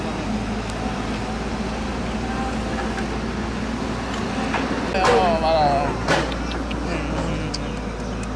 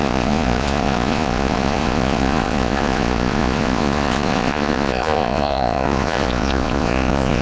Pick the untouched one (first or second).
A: first